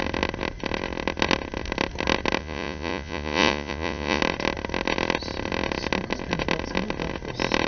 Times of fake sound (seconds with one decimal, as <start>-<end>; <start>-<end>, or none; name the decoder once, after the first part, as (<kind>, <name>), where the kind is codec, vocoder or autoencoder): 2.4-4.2 (vocoder, Vocos)